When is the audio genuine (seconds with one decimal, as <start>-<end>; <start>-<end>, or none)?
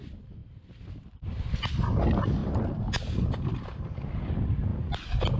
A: 0.0-4.7